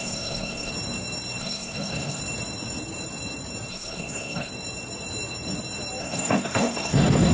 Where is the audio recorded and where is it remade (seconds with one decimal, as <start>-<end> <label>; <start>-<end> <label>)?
0.0-0.7 remade; 0.7-1.4 recorded; 1.4-2.2 remade; 2.2-3.7 recorded; 3.7-4.5 remade; 4.5-6.0 recorded; 6.0-7.3 remade